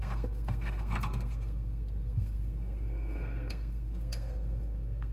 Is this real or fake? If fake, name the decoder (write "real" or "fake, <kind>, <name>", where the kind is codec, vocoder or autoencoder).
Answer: fake, codec, SNAC